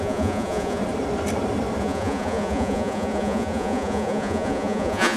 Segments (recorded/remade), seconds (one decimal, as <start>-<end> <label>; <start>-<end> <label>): 0.0-0.8 remade; 0.8-1.8 recorded; 1.8-5.2 remade